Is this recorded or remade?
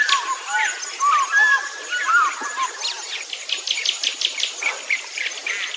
recorded